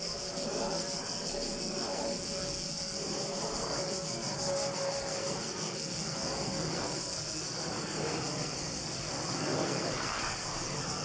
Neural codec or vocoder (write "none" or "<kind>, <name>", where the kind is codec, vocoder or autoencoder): codec, SNAC